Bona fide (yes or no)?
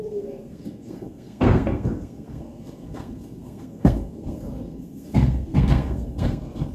no